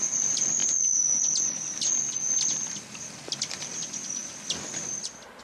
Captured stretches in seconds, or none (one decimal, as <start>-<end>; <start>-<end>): 0.0-5.4